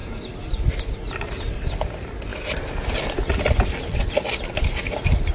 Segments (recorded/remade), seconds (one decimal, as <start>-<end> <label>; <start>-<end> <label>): 0.0-5.3 recorded